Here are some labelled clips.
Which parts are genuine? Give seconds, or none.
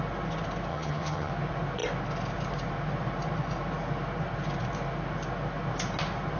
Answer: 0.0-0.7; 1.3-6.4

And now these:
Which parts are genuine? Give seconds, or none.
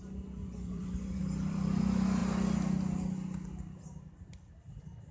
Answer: 0.0-0.4; 1.2-5.1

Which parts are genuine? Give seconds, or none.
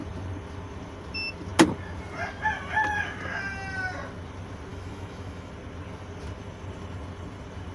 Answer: 0.0-4.7; 5.5-7.7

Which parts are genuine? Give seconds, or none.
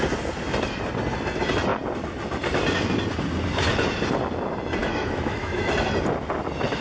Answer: 0.0-4.8; 5.7-6.8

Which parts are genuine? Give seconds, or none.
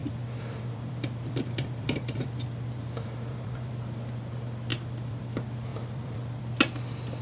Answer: 3.7-4.7; 5.2-5.7; 6.4-7.2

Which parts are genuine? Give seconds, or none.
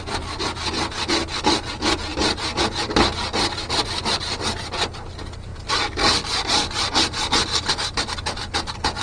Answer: 0.0-5.5; 6.3-9.0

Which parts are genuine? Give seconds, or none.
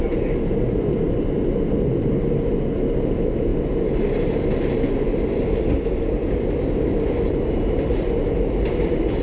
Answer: 0.0-9.2